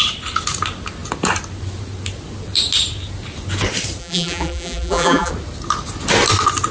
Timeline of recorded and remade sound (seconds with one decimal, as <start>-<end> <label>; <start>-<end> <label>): 0.0-4.0 recorded; 4.0-5.3 remade; 5.3-6.7 recorded